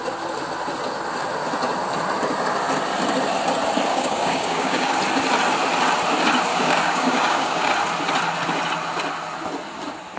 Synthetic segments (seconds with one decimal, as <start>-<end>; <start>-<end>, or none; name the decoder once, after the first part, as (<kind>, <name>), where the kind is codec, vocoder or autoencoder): 3.9-4.9 (codec, DAC); 6.5-7.7